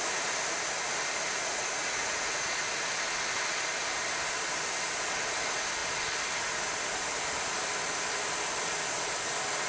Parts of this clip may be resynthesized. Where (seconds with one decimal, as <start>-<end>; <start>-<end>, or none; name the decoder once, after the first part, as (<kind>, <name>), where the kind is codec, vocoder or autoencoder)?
1.4-2.7 (vocoder, Vocos)